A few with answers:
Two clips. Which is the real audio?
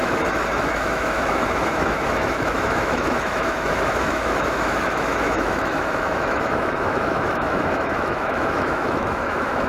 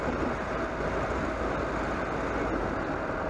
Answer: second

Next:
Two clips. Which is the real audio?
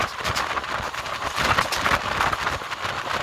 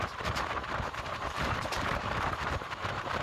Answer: first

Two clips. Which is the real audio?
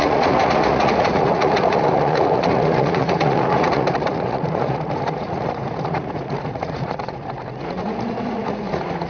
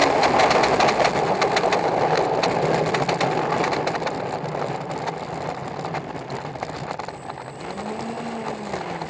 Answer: second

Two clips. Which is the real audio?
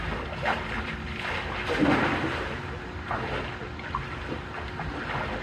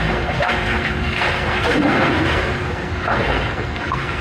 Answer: first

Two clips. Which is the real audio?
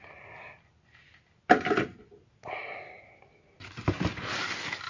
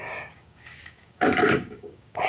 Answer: first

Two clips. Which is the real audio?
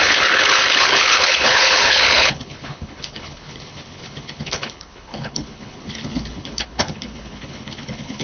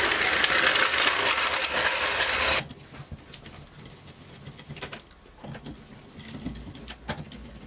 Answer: second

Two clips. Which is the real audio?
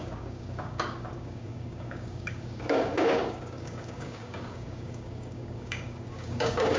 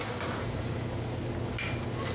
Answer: second